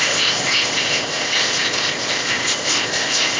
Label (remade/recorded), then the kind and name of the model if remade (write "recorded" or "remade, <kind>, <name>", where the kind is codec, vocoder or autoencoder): remade, codec, ZipCodec